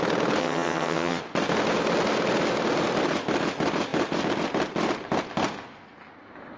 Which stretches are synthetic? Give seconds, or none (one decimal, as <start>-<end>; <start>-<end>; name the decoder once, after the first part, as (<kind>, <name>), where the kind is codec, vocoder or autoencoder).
0.4-1.2 (vocoder, HiFi-GAN)